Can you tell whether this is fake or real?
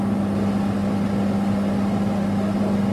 real